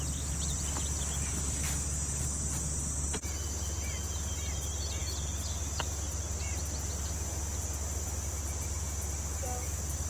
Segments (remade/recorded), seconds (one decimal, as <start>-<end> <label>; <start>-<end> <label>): 0.0-10.1 recorded